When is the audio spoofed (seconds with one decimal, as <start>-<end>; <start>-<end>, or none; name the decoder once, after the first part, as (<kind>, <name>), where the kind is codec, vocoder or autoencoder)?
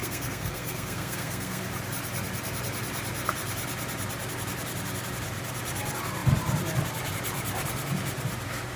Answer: 0.0-1.6 (codec, SNAC)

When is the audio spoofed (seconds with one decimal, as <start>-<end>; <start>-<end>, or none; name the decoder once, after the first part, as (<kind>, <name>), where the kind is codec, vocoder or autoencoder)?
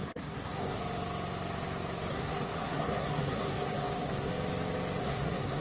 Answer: 0.0-0.8 (codec, SNAC); 2.1-4.3; 5.0-5.6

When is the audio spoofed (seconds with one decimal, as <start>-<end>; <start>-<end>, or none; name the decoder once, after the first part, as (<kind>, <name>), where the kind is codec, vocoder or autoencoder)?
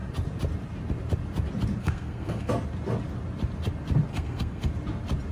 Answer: 1.8-2.5 (codec, SNAC); 4.1-4.7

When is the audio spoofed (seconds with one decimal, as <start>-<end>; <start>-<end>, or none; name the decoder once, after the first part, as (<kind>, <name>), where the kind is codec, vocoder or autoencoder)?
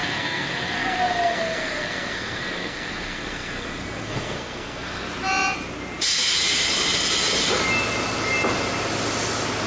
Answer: 0.0-5.0 (codec, SNAC)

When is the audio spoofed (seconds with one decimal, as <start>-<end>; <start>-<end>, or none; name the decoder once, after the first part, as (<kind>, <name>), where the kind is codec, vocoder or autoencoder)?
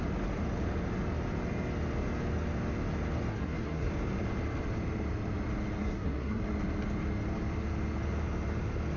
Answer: 3.3-3.9 (codec, SNAC); 5.8-6.4